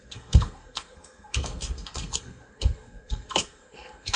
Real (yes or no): no